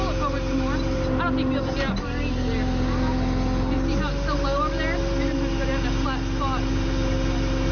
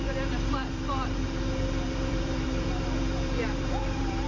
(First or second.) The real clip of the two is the first